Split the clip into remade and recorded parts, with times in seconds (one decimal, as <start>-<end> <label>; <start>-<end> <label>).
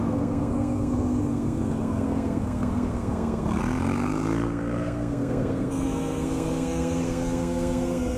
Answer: 0.0-8.2 remade